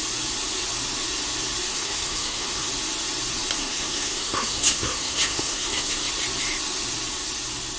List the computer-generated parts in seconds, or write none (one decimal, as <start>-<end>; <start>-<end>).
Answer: 1.7-2.7; 3.6-6.1